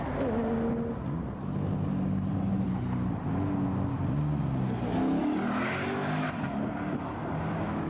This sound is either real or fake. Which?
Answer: real